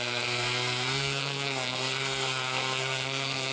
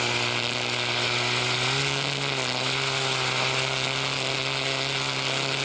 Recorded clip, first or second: second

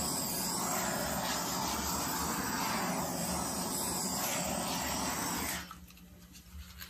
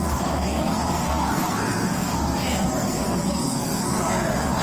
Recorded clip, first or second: first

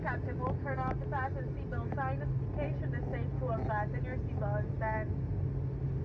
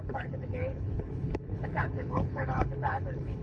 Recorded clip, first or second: first